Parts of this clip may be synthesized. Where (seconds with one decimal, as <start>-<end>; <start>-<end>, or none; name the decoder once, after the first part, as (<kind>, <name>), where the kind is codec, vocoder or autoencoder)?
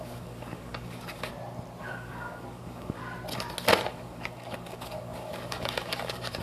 0.0-1.3 (codec, DAC); 1.8-3.0; 3.9-6.4